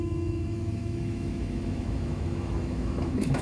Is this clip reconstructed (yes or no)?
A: yes